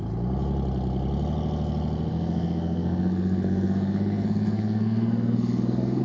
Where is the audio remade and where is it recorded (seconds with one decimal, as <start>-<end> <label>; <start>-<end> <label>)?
0.0-2.1 recorded; 2.1-6.0 remade